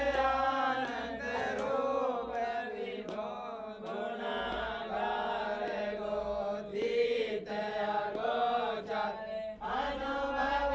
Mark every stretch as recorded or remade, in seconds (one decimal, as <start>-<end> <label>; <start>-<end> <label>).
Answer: 0.0-2.7 recorded; 2.7-3.6 remade; 3.6-6.7 recorded; 6.7-8.3 remade; 8.3-10.7 recorded